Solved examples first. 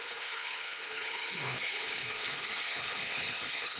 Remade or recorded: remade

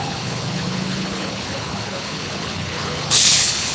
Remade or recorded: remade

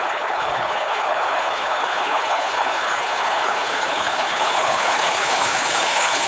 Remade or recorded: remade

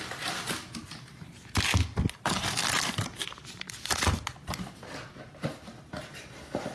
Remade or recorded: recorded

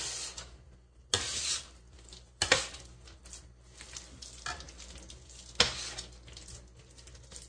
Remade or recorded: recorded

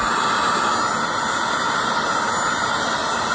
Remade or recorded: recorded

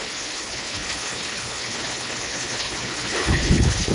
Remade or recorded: remade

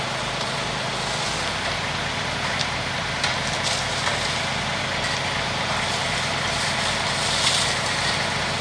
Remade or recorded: recorded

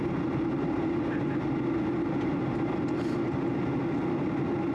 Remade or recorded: recorded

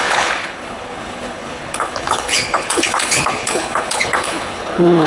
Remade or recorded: remade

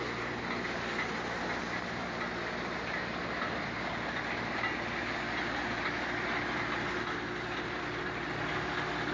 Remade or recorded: recorded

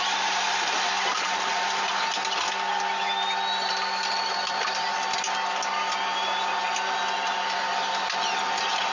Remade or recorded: recorded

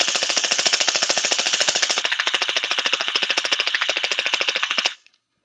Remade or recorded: remade